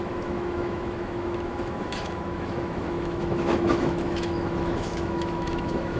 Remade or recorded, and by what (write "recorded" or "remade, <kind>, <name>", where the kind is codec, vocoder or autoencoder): remade, autoencoder, DAC-VAE